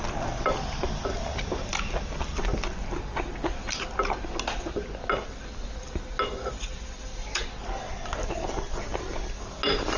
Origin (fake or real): real